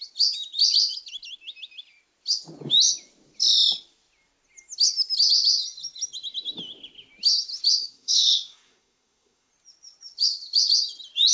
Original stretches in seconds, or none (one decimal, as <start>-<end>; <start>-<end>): 0.0-7.8; 9.5-11.3